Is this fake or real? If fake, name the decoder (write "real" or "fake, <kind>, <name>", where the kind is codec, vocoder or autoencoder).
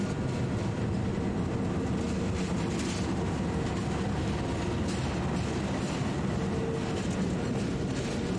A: real